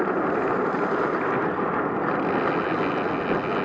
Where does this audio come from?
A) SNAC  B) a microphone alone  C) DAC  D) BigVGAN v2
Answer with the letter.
B